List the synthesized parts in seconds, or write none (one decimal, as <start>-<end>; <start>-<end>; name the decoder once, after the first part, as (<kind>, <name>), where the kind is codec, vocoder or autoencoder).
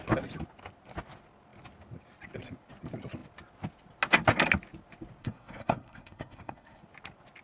5.2-6.8 (codec, SNAC)